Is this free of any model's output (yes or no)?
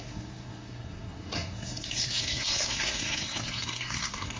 no